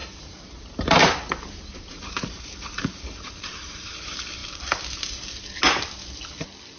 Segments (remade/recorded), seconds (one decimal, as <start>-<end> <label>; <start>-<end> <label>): 0.0-4.4 remade; 4.4-6.8 recorded